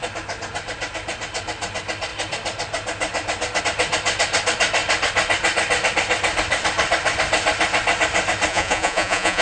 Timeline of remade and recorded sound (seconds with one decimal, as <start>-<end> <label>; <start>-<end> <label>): 0.0-8.5 recorded; 8.5-9.4 remade